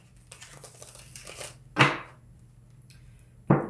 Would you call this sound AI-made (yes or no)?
no